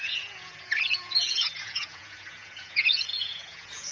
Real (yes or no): no